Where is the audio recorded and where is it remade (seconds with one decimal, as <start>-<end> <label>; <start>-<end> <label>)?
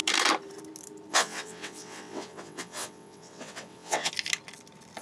0.0-1.1 recorded; 1.1-4.1 remade; 4.1-5.0 recorded